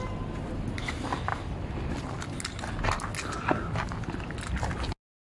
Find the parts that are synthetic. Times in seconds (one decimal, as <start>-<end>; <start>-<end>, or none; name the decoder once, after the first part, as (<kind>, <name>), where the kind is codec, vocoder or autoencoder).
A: none